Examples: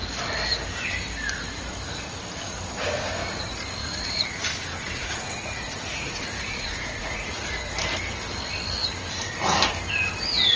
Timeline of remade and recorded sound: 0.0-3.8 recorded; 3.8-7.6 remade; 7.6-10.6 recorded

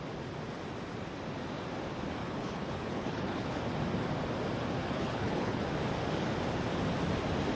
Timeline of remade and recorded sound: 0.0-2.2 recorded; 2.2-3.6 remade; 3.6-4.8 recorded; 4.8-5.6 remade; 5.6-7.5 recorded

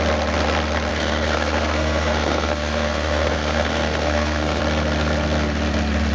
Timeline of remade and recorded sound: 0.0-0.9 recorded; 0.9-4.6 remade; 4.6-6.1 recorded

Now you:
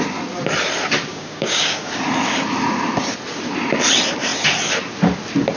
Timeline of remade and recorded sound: 0.0-1.1 recorded; 1.1-1.9 remade; 1.9-5.6 recorded

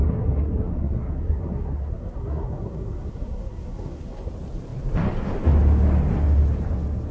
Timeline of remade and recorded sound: 0.0-4.3 remade; 4.3-7.1 recorded

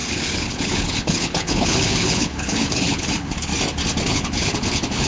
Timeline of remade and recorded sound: 0.0-3.5 remade; 3.5-4.1 recorded; 4.1-5.1 remade

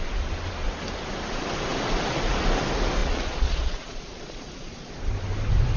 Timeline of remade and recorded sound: 0.0-3.0 recorded; 3.0-4.9 remade; 4.9-5.8 recorded